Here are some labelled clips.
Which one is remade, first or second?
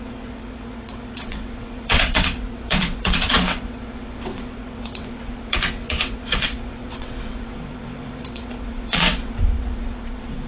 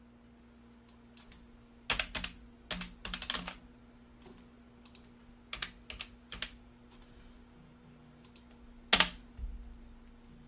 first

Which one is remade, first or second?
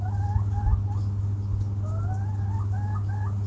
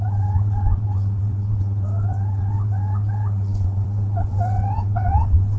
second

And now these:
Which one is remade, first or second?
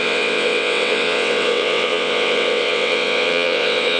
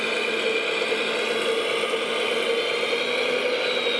first